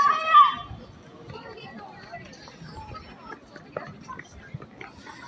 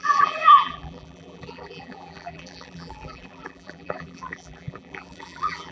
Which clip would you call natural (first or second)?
first